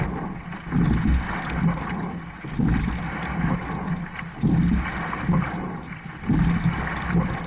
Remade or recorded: recorded